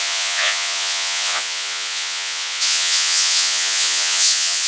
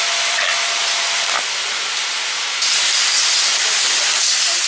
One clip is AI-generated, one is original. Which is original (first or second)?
second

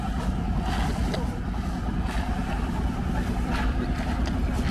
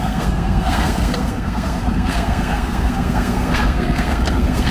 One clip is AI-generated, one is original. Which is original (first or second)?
first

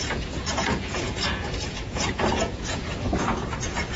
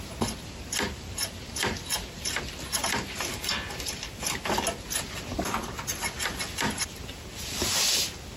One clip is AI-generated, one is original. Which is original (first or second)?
second